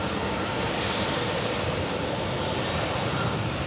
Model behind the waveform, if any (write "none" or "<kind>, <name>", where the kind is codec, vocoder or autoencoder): none